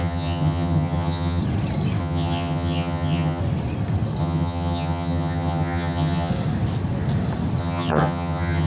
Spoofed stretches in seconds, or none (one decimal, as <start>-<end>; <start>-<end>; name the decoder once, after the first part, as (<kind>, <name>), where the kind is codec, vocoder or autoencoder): 0.0-1.4 (vocoder, HiFi-GAN); 2.0-3.4; 4.2-6.3; 7.6-8.7